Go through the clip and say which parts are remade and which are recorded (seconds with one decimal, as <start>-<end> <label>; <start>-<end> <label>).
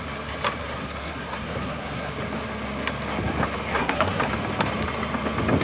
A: 0.0-0.6 recorded; 0.6-2.1 remade; 2.1-3.7 recorded; 3.7-4.2 remade; 4.2-5.6 recorded